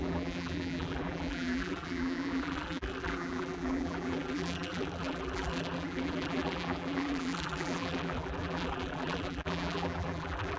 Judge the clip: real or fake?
fake